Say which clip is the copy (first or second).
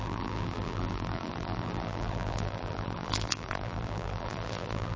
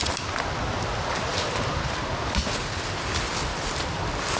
first